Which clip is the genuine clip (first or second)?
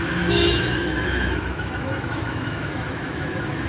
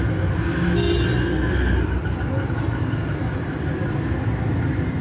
second